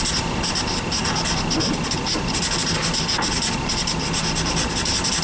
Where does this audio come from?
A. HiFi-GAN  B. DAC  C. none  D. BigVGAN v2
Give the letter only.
C